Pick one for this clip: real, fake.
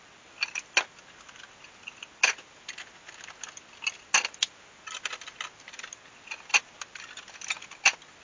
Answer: real